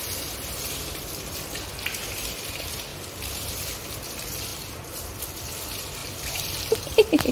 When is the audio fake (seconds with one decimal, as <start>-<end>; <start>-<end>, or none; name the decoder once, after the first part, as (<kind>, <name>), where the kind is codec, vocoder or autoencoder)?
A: 2.9-3.5 (vocoder, BigVGAN v2); 4.5-5.2; 6.0-7.3